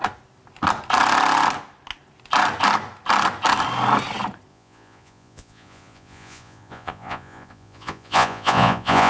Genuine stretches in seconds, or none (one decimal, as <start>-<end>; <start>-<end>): 0.0-4.5